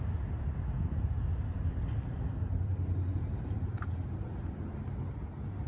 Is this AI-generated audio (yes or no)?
no